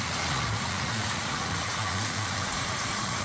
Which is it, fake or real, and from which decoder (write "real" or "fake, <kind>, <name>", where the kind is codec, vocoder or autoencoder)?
fake, vocoder, Vocos